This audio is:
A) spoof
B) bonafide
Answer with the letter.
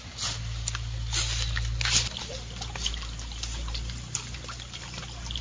B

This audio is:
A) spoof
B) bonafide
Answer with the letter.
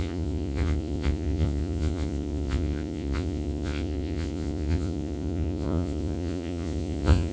A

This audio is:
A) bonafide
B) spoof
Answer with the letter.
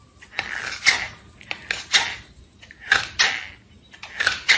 A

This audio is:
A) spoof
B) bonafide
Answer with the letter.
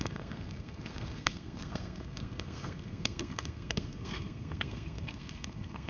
A